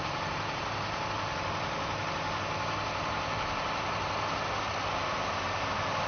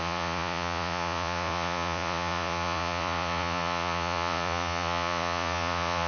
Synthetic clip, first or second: second